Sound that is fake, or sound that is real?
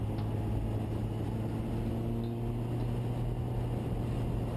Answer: real